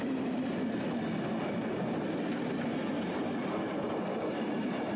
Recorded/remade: recorded